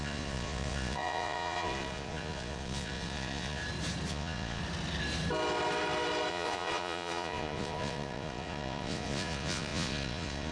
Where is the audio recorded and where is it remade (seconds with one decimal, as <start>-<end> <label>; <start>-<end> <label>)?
0.0-3.6 remade; 3.6-4.1 recorded; 4.1-4.6 remade; 4.6-6.3 recorded; 6.3-10.5 remade